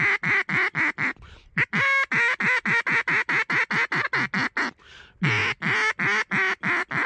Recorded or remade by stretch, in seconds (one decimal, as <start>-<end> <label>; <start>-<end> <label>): 0.0-7.1 recorded